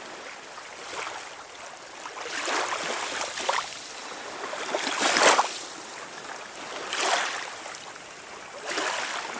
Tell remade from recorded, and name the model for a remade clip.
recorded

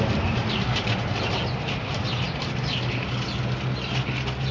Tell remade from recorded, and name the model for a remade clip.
recorded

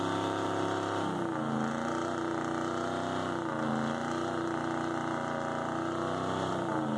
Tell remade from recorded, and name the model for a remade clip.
recorded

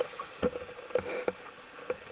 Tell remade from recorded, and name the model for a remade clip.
recorded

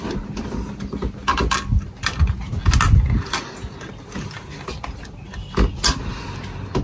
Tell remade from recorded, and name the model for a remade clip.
recorded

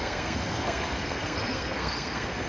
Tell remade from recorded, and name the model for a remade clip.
remade, codec, SNAC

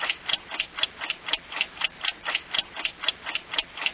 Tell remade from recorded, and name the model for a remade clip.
recorded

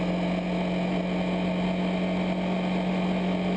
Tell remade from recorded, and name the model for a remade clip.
recorded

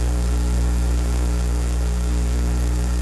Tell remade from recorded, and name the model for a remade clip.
remade, codec, SNAC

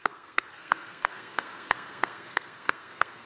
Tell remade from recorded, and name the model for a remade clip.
remade, codec, SNAC